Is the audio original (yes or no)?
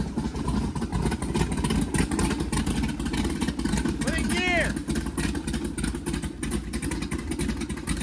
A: yes